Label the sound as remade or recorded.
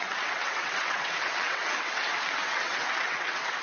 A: remade